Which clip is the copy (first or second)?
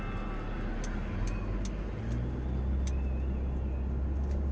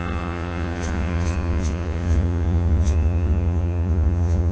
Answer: second